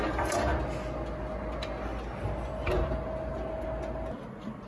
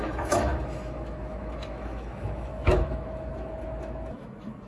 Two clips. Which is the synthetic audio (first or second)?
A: second